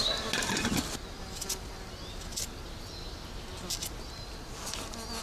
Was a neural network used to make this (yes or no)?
no